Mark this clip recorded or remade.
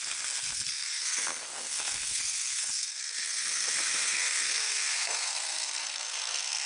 remade